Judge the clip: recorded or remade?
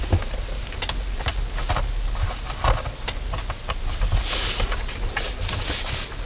recorded